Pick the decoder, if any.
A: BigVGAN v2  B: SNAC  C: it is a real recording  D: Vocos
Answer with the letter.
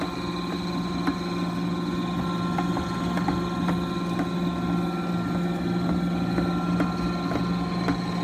C